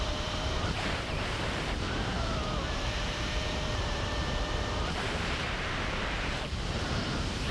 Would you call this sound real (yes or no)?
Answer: no